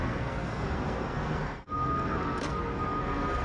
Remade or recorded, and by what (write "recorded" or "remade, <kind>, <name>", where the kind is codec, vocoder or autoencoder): remade, codec, SNAC